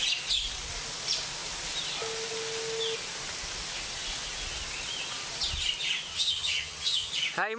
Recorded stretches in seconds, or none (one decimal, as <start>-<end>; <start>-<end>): 0.0-6.1; 7.1-7.6